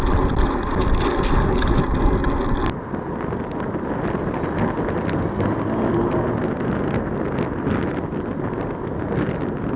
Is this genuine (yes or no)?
yes